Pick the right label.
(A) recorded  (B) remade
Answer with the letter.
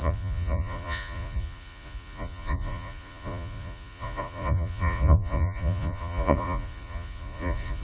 B